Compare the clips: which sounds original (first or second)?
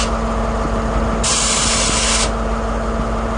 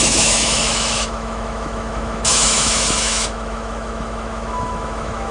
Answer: first